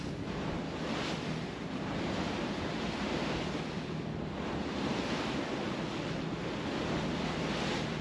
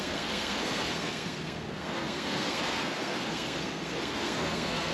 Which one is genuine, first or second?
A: first